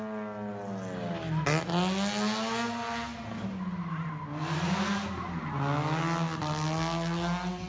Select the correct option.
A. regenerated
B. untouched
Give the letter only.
B